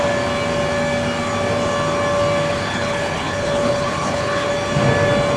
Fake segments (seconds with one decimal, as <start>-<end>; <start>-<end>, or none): 2.5-4.5